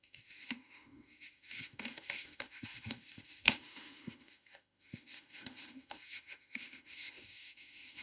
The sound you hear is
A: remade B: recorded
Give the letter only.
A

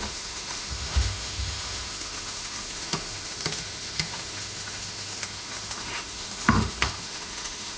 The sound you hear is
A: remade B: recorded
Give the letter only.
A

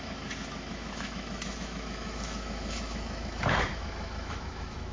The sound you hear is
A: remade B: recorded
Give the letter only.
A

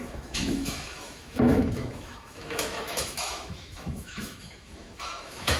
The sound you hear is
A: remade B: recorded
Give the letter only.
A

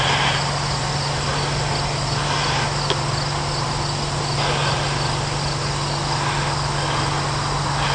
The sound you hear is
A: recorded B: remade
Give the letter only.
A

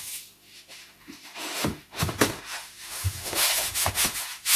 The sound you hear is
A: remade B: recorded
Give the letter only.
A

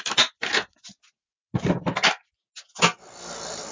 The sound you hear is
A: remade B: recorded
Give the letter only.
B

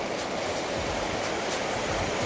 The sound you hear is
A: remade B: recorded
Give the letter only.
B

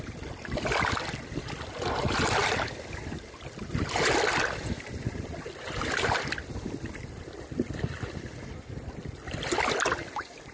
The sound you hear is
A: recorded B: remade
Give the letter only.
A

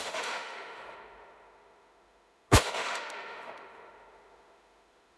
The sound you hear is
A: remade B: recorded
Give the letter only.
A